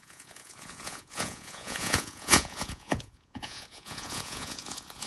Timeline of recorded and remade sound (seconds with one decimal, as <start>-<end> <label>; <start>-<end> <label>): 0.0-5.1 remade